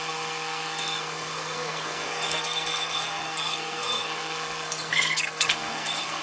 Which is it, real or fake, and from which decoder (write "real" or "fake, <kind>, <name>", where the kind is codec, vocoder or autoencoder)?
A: fake, codec, SNAC